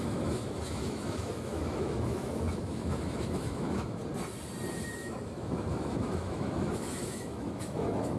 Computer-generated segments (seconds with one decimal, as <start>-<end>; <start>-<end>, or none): 0.0-4.0; 5.0-8.2